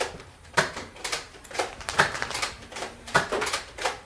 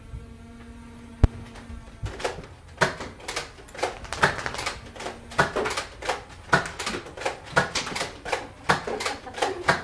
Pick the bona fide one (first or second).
second